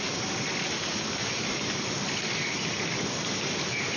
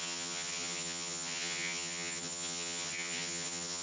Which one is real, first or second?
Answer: first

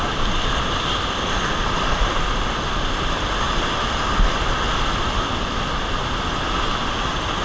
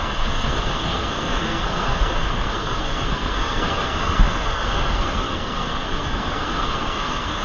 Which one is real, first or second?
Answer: first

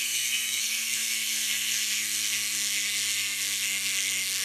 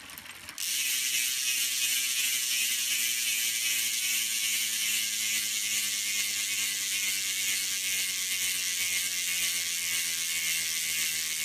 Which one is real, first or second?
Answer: second